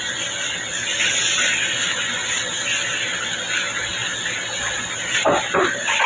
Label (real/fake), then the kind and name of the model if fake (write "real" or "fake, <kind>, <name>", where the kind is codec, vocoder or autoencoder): real